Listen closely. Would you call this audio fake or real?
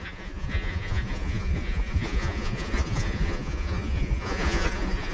fake